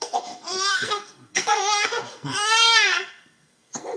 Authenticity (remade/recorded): remade